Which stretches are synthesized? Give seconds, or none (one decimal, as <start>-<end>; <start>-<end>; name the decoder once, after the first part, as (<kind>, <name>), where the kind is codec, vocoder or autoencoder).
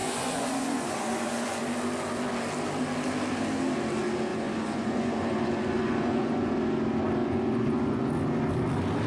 0.0-1.6 (vocoder, Vocos); 4.3-6.5; 7.2-8.1